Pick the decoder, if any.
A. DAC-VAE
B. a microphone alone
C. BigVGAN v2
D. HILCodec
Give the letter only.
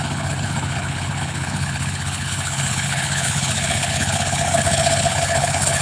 D